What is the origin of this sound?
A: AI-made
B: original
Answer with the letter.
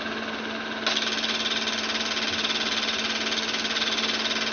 B